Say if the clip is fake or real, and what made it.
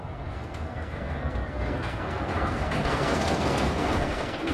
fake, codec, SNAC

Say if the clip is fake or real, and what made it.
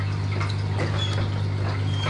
real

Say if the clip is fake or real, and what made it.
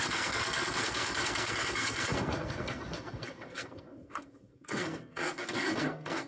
fake, codec, SNAC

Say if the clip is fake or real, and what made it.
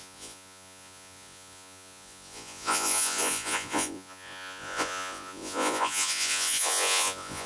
fake, vocoder, Vocos